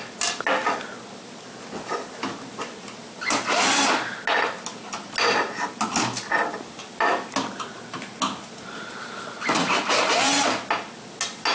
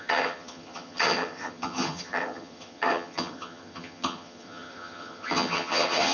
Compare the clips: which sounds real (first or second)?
first